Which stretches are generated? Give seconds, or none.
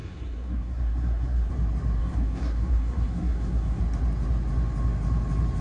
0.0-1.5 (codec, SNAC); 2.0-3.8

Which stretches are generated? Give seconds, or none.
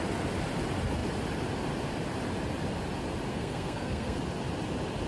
3.3-4.2 (codec, SNAC)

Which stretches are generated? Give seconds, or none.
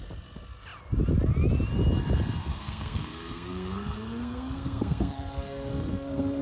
2.5-6.4 (codec, SNAC)